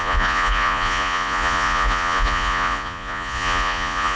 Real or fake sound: fake